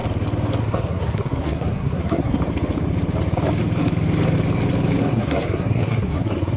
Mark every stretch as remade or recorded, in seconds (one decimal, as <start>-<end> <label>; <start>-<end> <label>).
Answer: 0.0-0.6 recorded; 0.6-2.4 remade; 2.4-5.0 recorded; 5.0-6.6 remade